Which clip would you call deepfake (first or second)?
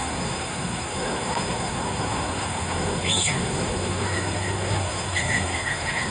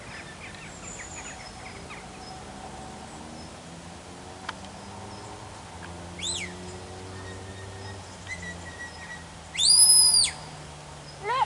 first